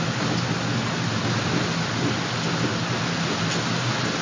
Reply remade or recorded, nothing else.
recorded